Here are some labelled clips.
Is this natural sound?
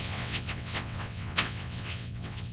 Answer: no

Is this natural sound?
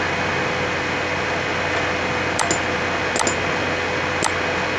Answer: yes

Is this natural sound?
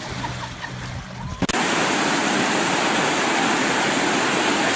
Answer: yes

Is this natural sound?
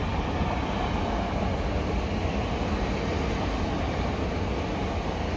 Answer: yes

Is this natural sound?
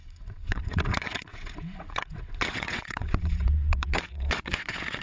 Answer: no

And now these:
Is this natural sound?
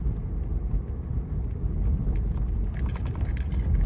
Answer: yes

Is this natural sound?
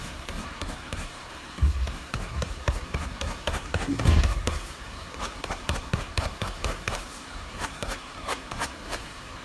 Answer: no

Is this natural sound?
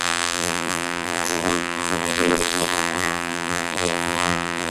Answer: no